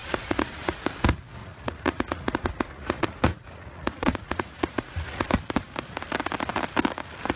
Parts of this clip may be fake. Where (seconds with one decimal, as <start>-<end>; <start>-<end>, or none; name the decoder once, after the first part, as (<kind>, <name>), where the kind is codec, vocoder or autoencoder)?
0.0-0.8 (vocoder, Vocos); 1.4-5.3